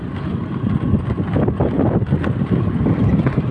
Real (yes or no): yes